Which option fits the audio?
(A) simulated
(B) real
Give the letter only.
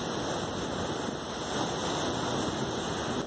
B